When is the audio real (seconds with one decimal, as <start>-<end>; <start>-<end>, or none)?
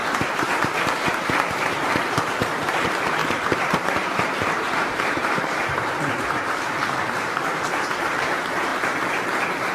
8.7-9.7